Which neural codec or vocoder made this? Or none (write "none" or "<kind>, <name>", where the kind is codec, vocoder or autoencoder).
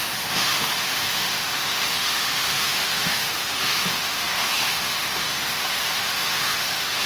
autoencoder, DAC-VAE